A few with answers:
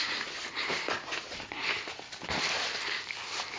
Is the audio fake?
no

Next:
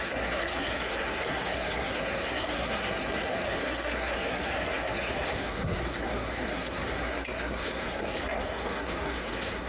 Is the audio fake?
yes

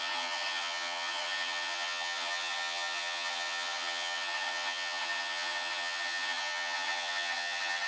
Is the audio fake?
yes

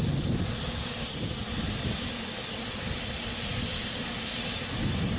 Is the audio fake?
no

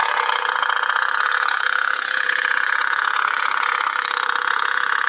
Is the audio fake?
yes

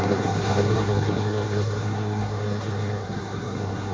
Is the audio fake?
yes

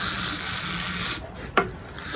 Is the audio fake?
no